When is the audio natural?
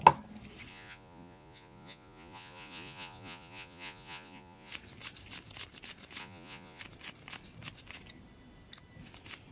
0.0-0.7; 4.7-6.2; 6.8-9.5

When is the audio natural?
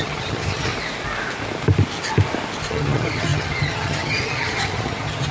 0.7-2.7